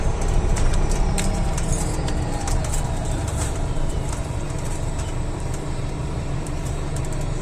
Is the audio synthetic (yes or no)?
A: yes